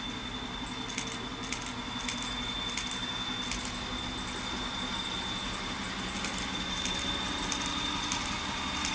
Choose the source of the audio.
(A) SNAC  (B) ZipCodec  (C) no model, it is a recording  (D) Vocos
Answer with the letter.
C